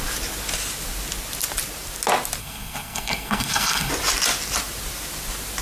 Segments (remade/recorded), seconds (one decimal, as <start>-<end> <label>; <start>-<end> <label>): 0.0-2.4 recorded; 2.4-3.9 remade; 3.9-5.6 recorded